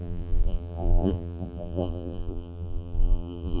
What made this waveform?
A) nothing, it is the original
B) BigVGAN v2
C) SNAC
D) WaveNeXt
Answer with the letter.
B